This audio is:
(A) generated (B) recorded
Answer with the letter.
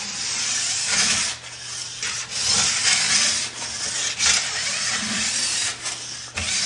B